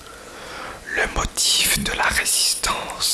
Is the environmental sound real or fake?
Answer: real